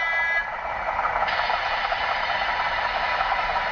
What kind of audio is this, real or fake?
fake